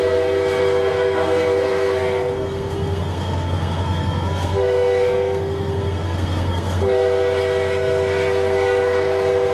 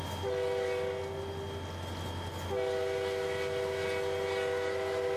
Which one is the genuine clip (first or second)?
second